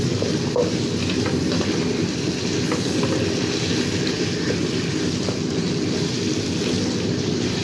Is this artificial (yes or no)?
no